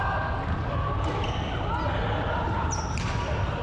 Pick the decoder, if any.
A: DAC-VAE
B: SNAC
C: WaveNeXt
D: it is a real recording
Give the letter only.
D